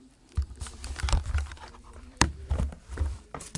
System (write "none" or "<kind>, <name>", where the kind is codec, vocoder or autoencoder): vocoder, BigVGAN v2